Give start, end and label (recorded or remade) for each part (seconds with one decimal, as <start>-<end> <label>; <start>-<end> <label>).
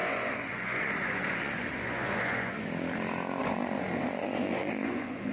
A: 0.0-2.6 remade; 2.6-3.4 recorded; 3.4-5.3 remade